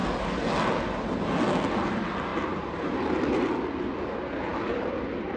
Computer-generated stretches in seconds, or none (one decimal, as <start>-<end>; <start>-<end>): 2.3-3.5; 4.5-5.4